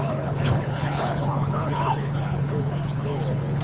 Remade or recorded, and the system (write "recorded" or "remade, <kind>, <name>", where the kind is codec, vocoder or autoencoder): remade, codec, HILCodec